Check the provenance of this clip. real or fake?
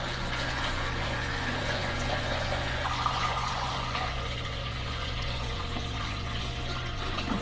fake